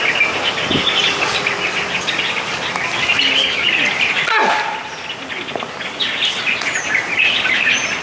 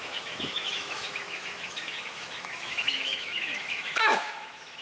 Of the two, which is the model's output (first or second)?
second